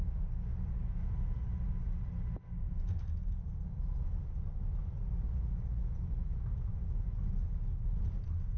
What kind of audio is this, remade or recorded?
recorded